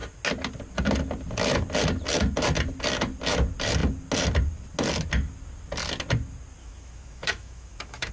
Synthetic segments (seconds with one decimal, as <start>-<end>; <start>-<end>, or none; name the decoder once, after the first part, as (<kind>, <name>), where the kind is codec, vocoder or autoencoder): 6.6-8.1 (autoencoder, DAC-VAE)